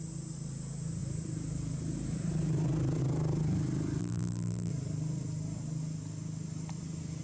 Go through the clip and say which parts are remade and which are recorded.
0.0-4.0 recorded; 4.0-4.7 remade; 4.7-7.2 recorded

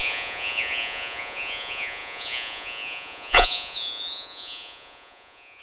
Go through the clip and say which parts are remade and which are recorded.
0.0-5.6 remade

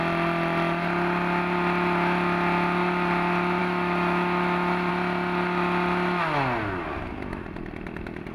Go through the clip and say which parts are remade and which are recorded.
0.0-3.6 recorded; 3.6-4.9 remade; 4.9-8.3 recorded

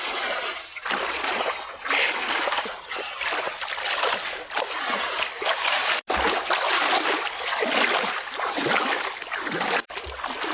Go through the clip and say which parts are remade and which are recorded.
0.0-10.5 recorded